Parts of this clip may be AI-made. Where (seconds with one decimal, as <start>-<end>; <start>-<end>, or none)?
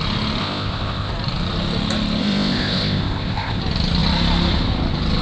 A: 0.4-1.1; 2.2-3.6